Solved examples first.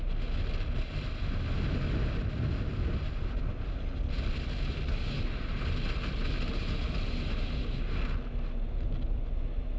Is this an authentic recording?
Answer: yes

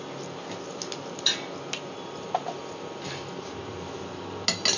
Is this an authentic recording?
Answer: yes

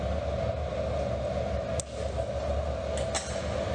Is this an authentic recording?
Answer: yes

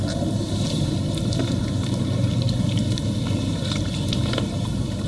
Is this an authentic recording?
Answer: no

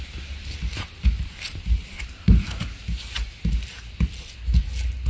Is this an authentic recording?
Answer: yes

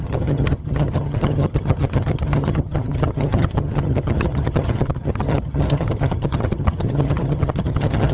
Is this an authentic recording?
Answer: no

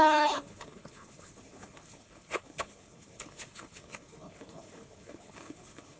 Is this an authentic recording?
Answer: no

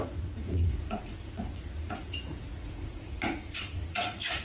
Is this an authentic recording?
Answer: no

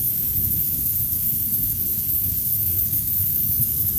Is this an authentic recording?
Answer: no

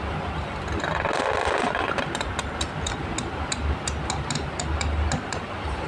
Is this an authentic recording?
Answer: yes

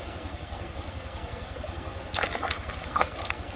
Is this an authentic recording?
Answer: no